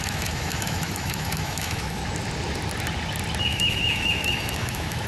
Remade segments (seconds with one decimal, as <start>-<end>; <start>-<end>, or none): 0.0-2.0; 3.4-5.1